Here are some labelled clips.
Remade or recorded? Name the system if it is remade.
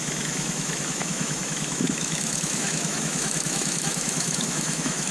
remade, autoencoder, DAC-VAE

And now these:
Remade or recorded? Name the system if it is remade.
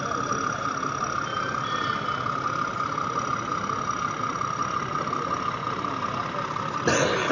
recorded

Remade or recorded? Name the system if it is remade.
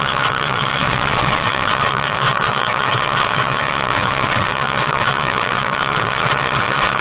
remade, vocoder, WaveNeXt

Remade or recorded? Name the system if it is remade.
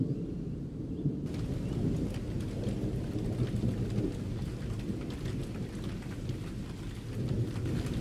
recorded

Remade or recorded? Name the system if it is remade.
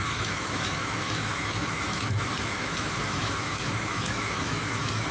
remade, autoencoder, DAC-VAE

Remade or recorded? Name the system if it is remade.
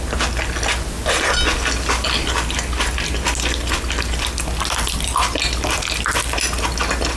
recorded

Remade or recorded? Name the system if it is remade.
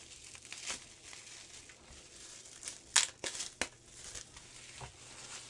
recorded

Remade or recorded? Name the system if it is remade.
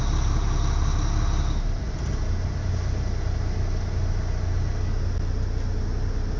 recorded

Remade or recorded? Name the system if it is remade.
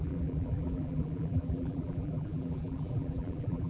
remade, vocoder, BigVGAN v2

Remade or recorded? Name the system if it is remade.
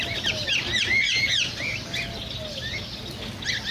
recorded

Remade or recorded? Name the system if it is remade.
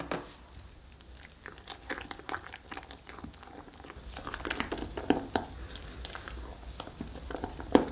recorded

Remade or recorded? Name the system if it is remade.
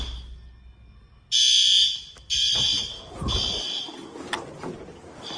recorded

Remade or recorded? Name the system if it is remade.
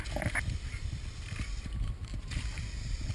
remade, vocoder, BigVGAN v2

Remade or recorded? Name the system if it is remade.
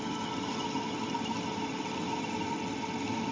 recorded